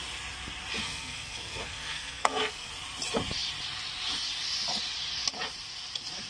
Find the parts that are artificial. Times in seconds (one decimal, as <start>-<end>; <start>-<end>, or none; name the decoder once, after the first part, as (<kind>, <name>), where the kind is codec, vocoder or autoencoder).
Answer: 0.8-2.7 (codec, SNAC)